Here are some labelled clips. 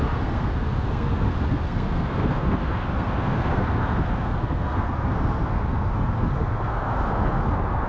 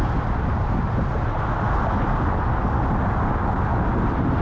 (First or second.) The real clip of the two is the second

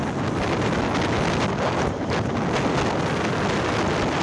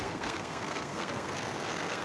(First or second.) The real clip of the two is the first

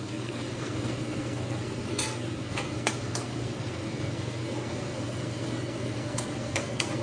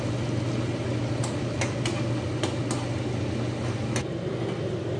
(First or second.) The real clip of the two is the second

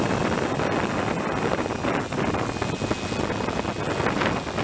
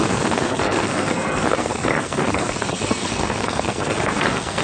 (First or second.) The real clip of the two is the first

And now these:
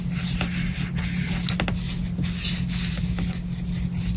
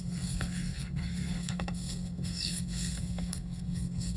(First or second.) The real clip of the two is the first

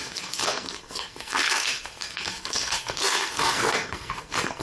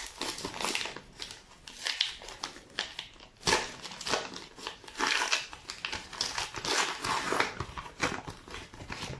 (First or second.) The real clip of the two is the second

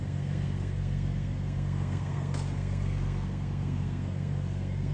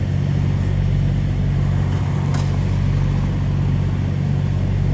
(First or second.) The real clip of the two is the second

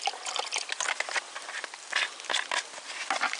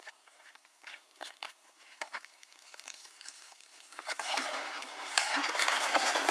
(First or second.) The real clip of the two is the first